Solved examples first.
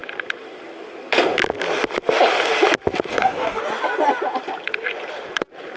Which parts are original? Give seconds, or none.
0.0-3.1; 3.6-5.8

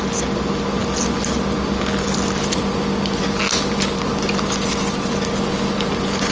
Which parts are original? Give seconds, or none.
0.0-6.3

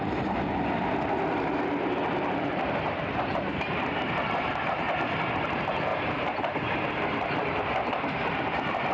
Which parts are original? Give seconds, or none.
0.0-8.9

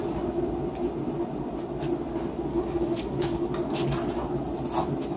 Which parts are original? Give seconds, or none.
0.0-2.5; 3.5-5.2

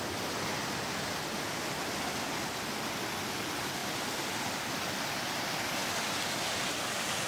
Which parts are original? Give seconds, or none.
0.0-7.3

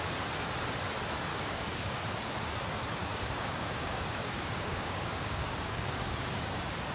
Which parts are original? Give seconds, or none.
0.0-1.3; 2.0-3.0; 6.5-6.9

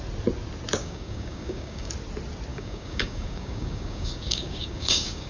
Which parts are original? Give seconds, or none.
0.0-0.8; 1.9-2.5